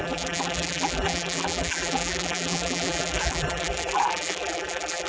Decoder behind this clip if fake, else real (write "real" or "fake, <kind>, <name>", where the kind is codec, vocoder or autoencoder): fake, vocoder, BigVGAN v2